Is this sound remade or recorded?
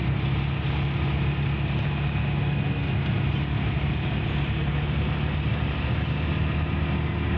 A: recorded